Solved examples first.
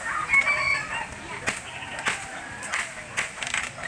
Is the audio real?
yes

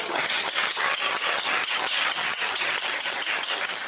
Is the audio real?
no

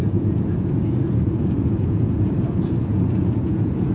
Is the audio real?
no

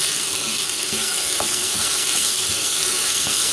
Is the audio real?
no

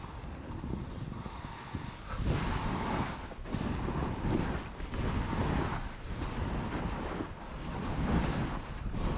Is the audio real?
yes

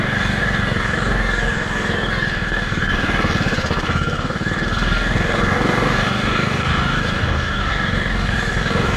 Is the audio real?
no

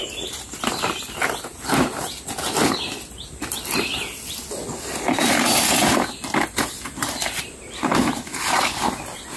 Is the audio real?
yes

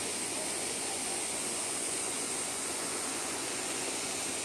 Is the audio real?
no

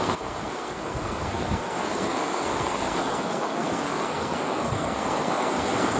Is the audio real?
no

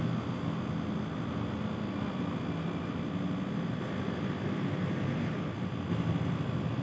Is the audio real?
yes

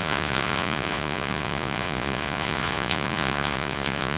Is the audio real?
no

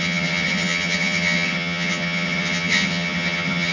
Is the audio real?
no